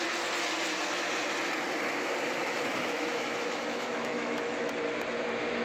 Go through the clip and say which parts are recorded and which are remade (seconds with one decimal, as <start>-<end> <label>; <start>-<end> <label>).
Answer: 0.0-2.4 recorded; 2.4-4.7 remade; 4.7-5.6 recorded